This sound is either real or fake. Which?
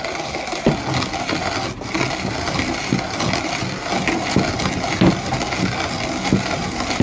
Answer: real